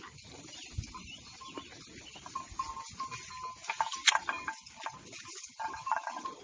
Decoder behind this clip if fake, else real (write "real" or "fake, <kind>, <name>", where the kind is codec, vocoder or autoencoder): real